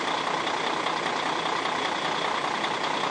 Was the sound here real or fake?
real